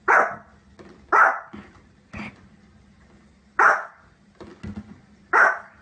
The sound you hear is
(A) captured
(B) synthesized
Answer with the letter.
A